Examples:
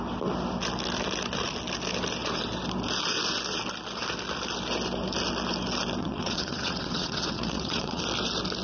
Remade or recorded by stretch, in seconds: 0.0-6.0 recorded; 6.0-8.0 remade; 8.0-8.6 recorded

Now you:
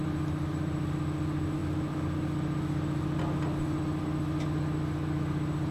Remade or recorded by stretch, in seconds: 0.0-5.7 recorded

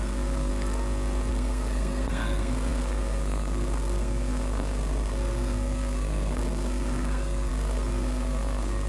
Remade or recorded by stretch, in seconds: 0.0-0.5 remade; 0.5-1.3 recorded; 1.3-8.9 remade